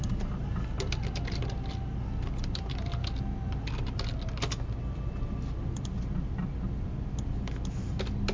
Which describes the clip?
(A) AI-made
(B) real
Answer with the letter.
B